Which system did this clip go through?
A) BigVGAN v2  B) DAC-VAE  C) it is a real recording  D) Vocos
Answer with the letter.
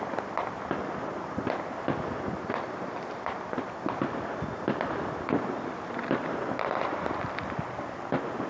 C